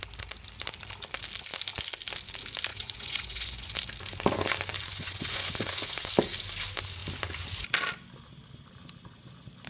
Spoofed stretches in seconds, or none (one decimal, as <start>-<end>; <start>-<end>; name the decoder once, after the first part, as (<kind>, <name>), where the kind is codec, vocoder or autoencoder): 2.7-3.7 (vocoder, Vocos); 4.9-6.1